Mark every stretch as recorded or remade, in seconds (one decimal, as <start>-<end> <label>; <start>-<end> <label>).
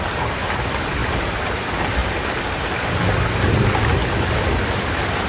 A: 0.0-1.0 recorded; 1.0-1.6 remade; 1.6-5.3 recorded